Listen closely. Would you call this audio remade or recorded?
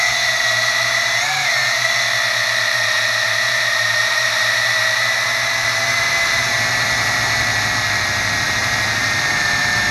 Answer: remade